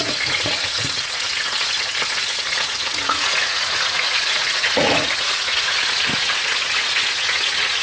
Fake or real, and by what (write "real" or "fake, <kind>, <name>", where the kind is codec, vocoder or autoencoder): fake, vocoder, Vocos